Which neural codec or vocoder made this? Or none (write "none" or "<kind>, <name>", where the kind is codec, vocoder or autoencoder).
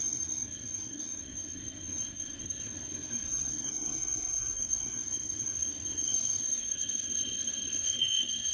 codec, SNAC